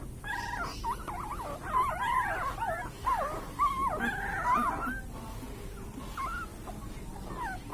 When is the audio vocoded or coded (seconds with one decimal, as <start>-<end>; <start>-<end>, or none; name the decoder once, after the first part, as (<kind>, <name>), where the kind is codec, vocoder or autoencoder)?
none